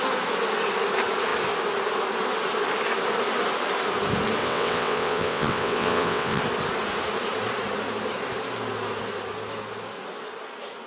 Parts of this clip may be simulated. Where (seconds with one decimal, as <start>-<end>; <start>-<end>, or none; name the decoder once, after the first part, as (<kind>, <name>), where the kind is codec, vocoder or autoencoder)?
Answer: 4.4-6.4 (vocoder, WaveNeXt)